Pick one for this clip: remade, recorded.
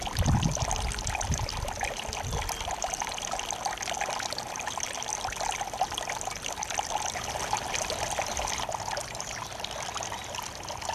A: recorded